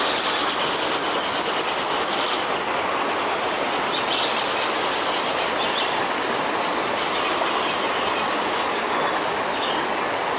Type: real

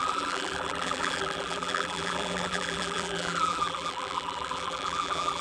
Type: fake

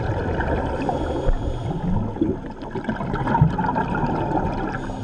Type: real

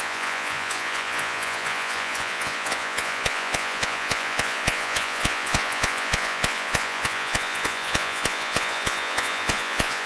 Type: fake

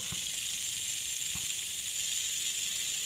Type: real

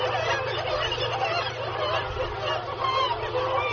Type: real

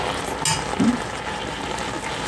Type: real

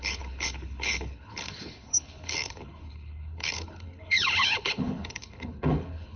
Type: fake